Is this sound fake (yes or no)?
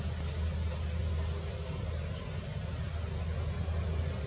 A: no